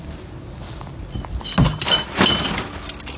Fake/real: real